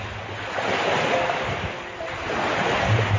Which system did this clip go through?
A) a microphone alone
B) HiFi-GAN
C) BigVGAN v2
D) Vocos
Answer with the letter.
A